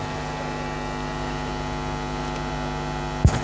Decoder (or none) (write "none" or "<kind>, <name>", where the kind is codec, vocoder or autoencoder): none